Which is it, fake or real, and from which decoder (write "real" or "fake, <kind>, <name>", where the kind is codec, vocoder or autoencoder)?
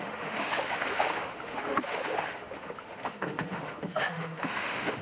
fake, autoencoder, DAC-VAE